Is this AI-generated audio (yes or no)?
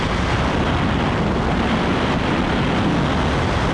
no